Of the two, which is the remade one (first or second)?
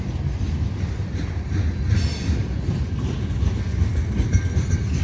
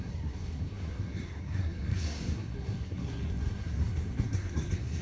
second